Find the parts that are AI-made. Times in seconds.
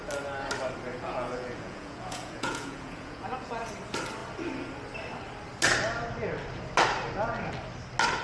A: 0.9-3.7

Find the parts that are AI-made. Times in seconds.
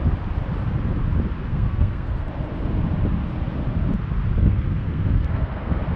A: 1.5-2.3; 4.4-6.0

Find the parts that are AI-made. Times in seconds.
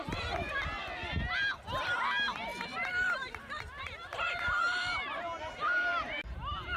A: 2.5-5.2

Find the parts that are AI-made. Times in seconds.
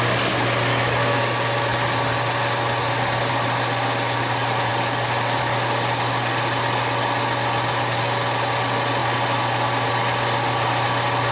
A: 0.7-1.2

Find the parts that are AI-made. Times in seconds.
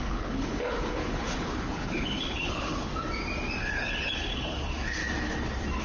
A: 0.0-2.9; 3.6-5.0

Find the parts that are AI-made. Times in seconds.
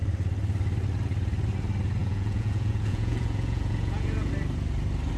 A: 2.0-4.3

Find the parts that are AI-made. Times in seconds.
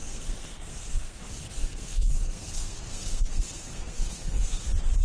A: 0.0-1.2; 1.6-4.6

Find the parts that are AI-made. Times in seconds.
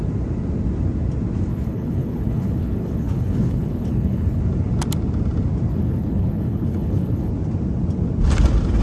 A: 1.5-4.4; 5.7-7.3